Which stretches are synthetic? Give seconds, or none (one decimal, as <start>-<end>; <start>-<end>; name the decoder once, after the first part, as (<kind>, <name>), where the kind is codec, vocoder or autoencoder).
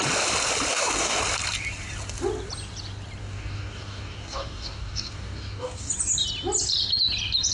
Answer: 0.7-1.2 (codec, DAC); 3.2-5.9